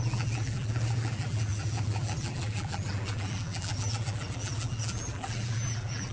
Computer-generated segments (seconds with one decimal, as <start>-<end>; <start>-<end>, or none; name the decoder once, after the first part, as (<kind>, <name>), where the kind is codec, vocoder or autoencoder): 0.0-6.1 (vocoder, BigVGAN v2)